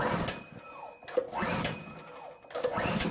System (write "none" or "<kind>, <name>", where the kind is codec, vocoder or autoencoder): none